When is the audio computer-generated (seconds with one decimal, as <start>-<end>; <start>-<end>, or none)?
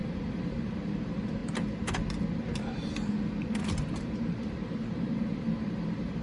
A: 0.0-1.4; 3.9-6.2